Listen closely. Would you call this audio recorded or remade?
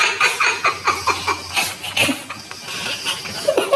recorded